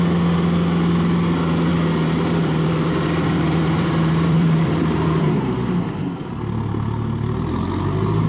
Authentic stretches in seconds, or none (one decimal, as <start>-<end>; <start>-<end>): 0.0-1.7; 5.2-8.3